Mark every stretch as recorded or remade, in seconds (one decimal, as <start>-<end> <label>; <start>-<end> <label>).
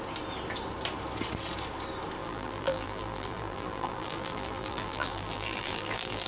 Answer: 0.0-2.2 recorded; 2.2-6.3 remade